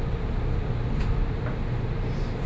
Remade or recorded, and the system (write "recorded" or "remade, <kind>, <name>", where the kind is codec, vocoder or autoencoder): recorded